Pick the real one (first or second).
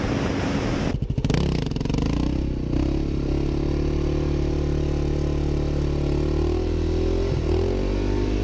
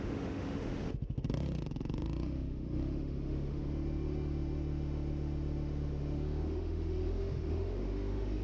first